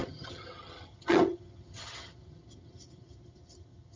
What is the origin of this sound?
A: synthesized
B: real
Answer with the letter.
A